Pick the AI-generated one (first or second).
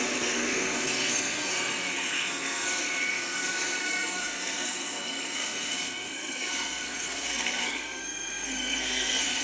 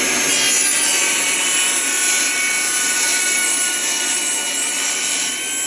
first